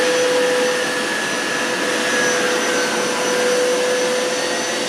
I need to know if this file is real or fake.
real